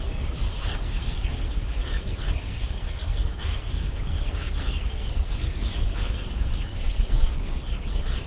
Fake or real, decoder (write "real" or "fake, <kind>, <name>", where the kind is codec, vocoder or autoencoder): fake, codec, SNAC